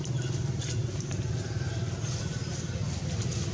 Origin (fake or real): real